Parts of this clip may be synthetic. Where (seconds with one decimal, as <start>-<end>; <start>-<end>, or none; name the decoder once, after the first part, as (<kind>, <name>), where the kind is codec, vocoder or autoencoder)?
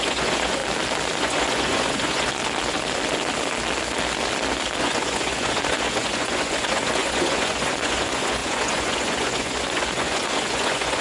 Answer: 0.0-0.6 (vocoder, Vocos); 1.2-2.4; 4.8-11.0